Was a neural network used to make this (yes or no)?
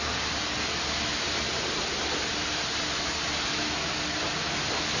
no